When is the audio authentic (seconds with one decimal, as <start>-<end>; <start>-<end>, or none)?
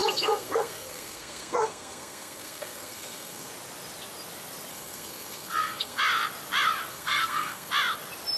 3.5-4.7; 6.0-6.9; 7.7-8.4